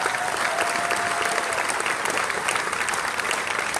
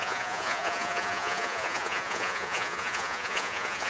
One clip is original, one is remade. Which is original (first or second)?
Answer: first